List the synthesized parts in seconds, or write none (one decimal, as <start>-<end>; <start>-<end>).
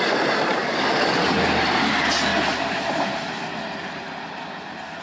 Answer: 0.5-1.2